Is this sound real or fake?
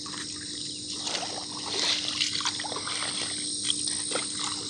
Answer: real